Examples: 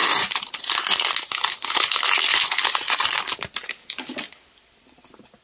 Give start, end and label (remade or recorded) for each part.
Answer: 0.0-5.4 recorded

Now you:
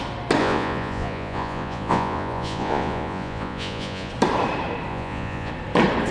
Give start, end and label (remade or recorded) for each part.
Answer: 0.0-0.4 recorded; 0.4-4.1 remade; 4.1-4.9 recorded; 4.9-5.5 remade; 5.5-6.1 recorded

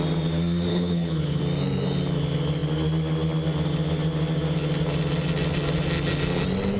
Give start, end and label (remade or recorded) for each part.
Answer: 0.0-0.7 recorded; 0.7-1.4 remade; 1.4-6.8 recorded

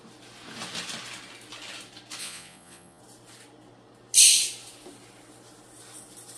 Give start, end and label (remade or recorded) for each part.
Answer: 0.0-2.2 recorded; 2.2-3.0 remade; 3.0-6.4 recorded

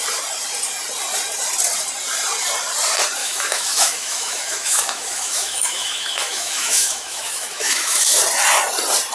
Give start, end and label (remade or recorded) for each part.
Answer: 0.0-3.2 recorded; 3.2-8.2 remade; 8.2-9.1 recorded

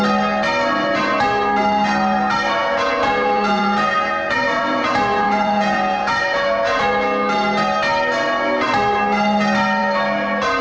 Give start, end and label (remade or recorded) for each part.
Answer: 0.0-2.6 recorded; 2.6-6.8 remade; 6.8-10.6 recorded

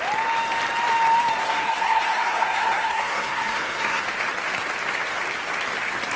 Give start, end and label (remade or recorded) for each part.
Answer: 0.0-1.4 recorded; 1.4-4.0 remade; 4.0-6.2 recorded

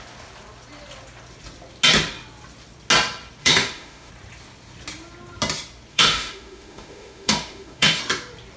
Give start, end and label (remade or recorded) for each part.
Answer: 0.0-3.4 recorded; 3.4-4.1 remade; 4.1-5.9 recorded; 5.9-8.0 remade; 8.0-8.6 recorded